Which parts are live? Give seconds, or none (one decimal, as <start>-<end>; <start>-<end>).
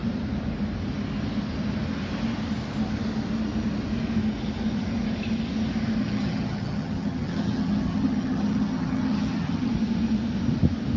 0.0-6.0; 9.7-11.0